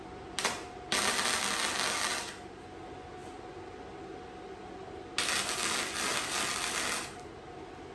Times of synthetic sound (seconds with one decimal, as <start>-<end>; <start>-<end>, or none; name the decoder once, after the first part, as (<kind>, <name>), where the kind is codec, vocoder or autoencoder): none